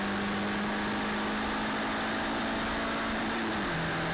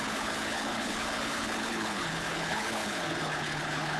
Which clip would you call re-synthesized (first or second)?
second